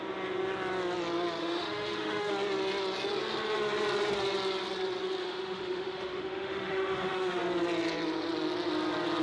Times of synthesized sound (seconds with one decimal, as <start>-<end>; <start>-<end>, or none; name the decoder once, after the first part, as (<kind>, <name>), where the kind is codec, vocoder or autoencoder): 1.4-2.3 (autoencoder, DAC-VAE); 5.2-7.4